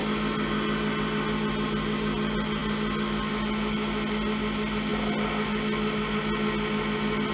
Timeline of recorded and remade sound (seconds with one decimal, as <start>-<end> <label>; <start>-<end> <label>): 0.0-7.3 recorded